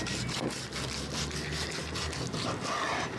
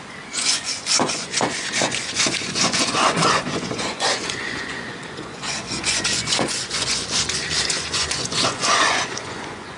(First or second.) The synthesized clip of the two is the second